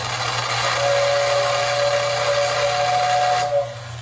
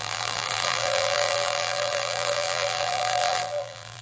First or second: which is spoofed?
second